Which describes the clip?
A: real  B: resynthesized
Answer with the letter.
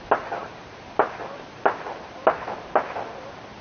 A